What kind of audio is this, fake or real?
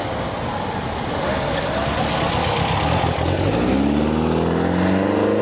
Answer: real